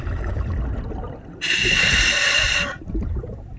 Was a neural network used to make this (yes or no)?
yes